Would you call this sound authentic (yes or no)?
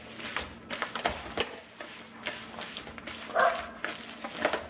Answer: yes